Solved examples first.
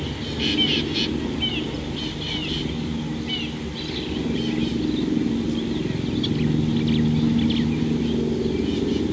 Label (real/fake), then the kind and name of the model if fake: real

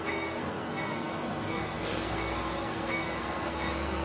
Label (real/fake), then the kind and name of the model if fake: fake, codec, SNAC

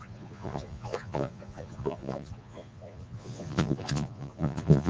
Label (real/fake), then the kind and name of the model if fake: fake, vocoder, Vocos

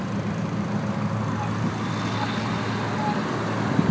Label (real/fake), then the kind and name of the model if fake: real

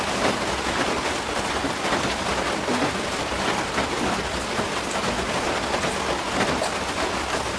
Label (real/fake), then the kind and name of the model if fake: real